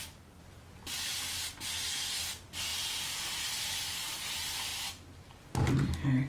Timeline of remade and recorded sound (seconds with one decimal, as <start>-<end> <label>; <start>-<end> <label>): 0.0-6.3 recorded